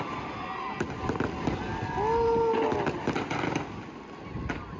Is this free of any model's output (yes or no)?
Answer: yes